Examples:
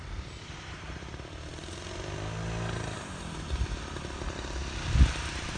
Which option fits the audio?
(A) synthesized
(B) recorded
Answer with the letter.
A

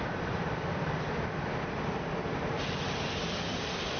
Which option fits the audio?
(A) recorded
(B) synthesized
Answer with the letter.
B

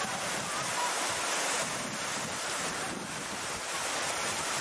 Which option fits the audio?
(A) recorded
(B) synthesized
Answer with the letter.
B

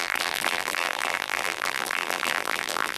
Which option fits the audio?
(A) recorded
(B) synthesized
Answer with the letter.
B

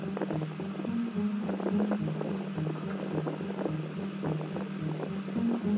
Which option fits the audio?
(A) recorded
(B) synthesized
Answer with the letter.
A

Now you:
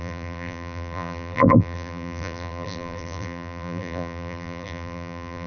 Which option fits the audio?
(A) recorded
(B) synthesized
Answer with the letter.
B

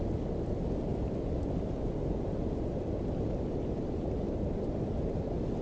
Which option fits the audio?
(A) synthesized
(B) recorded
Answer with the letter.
B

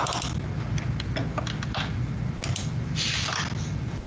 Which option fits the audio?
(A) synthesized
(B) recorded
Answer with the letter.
B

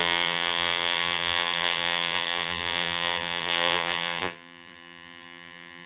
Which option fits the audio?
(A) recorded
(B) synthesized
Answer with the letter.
B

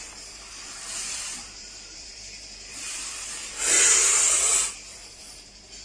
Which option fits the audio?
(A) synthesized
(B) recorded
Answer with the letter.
A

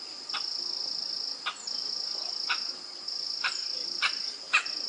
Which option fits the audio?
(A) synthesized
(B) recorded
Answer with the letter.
A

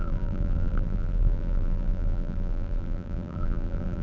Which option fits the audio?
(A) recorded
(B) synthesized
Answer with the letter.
B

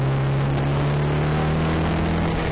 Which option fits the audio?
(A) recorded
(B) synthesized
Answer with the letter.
A